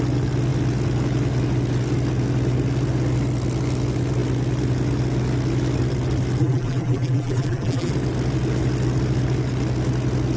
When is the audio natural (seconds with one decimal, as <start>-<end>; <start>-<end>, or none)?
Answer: 0.0-6.4; 7.9-10.4